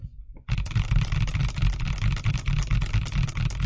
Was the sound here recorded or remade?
recorded